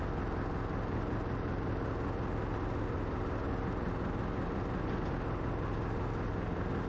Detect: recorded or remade recorded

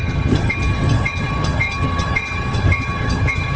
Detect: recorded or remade remade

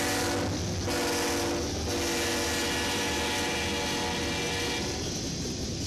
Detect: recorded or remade recorded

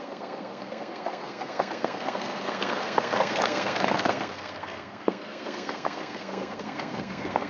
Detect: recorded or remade remade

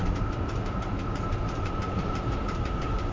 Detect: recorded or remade remade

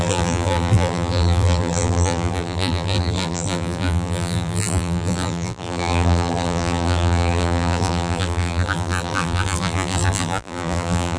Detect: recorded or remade remade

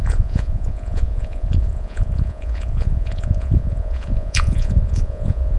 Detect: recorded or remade remade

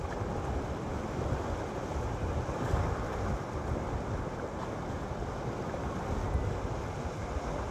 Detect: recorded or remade recorded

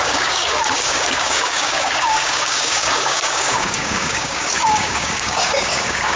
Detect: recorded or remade remade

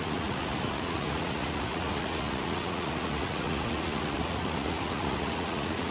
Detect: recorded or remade remade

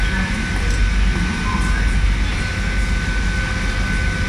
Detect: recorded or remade recorded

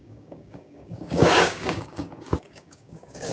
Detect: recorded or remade remade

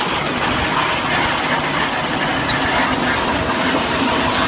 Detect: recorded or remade recorded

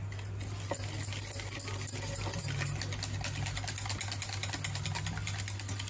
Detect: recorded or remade recorded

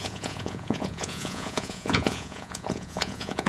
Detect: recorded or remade remade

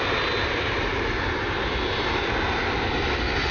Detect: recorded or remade recorded